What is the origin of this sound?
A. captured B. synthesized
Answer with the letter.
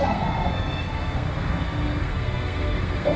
B